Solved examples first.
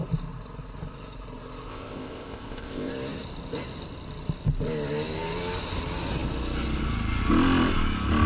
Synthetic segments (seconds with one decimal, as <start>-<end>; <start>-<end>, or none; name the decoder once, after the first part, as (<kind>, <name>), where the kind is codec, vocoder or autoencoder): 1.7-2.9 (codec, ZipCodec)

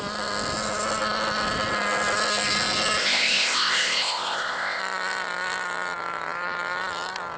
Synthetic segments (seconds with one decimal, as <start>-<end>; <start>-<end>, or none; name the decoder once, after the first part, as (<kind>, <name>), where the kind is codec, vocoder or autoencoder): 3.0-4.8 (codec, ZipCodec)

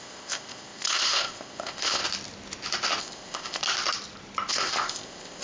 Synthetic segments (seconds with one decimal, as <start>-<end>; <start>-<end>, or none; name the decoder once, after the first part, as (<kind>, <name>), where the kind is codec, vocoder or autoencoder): 0.0-2.0 (codec, ZipCodec); 3.0-3.6; 4.5-5.4

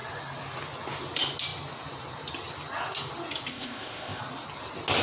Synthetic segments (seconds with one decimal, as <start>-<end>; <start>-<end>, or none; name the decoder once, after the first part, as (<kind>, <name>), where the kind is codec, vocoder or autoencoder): 3.5-4.2 (codec, ZipCodec)

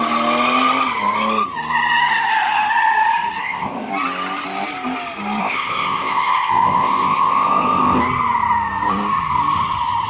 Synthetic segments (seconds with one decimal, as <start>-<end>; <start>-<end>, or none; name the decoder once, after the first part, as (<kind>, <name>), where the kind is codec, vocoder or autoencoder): 3.4-3.9 (codec, ZipCodec); 5.4-8.0

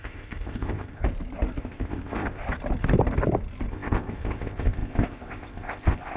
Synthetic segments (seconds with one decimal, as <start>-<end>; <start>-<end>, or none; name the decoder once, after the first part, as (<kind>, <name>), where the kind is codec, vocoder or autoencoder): 0.0-1.0 (codec, ZipCodec); 1.6-2.4; 3.7-6.2